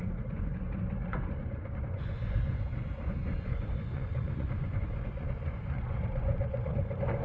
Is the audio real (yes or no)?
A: no